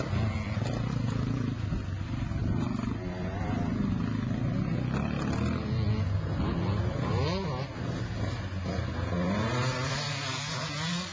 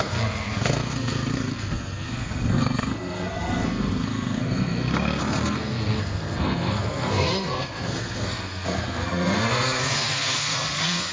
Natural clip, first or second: first